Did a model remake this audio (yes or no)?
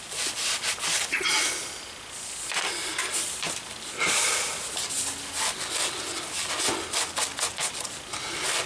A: no